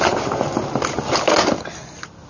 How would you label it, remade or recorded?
recorded